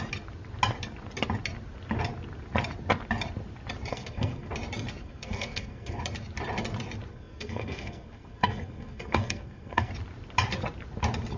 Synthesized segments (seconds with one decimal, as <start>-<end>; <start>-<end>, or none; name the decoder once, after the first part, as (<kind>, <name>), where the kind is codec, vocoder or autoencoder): 3.9-4.5 (codec, SNAC); 5.0-6.0; 7.1-9.9